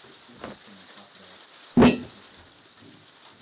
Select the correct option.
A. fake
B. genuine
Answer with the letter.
B